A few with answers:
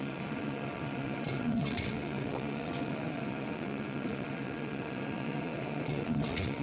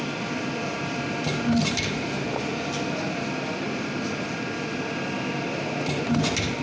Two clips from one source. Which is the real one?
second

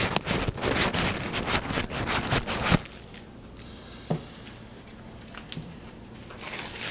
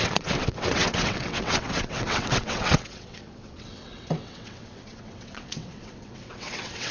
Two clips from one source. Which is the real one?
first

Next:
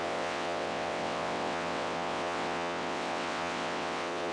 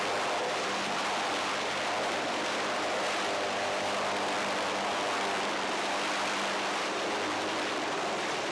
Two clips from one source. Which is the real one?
second